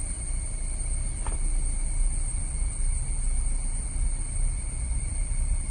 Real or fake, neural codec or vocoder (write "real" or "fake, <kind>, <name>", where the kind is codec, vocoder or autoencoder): real